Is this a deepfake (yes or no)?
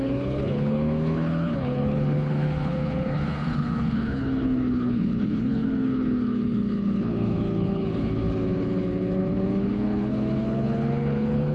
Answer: yes